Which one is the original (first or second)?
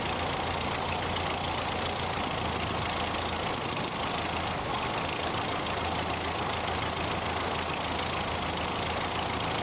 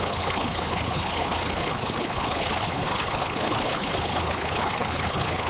first